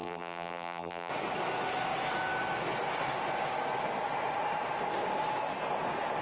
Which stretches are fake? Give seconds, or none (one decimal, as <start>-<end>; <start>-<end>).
0.0-1.1